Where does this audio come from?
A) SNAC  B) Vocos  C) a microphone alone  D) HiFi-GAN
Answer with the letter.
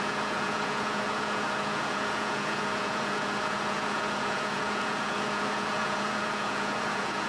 B